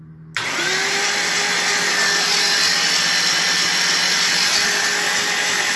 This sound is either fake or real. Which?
real